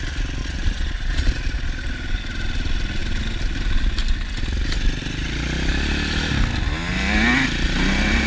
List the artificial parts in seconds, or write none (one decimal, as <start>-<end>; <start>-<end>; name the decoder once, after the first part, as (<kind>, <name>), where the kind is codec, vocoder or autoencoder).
0.4-1.8 (vocoder, Vocos)